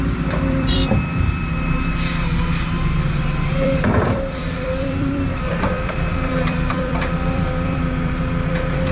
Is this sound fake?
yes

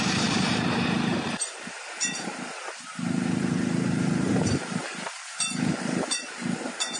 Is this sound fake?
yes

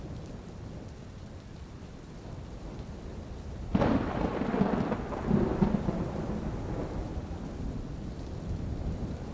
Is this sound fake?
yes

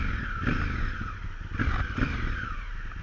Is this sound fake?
no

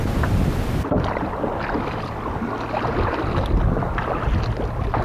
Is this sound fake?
no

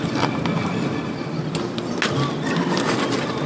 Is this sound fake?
no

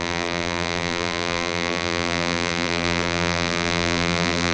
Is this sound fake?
yes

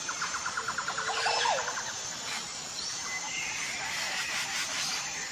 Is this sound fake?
yes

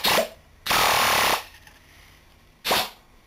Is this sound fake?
yes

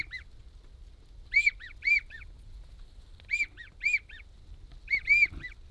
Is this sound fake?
no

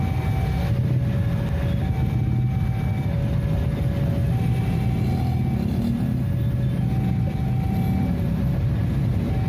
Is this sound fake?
no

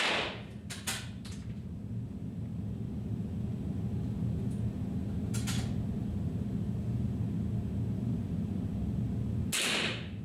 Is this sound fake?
no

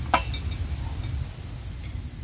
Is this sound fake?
no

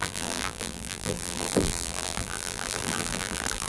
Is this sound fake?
yes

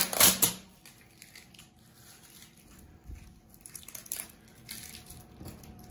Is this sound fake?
yes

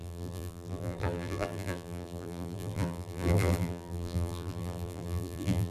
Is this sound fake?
yes